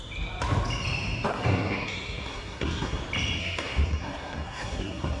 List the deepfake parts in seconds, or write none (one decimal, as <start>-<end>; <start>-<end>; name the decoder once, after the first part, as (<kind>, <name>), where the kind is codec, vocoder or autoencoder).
1.3-3.0 (codec, SNAC); 3.4-5.2